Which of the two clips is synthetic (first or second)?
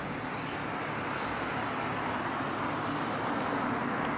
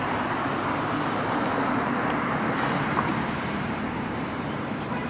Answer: second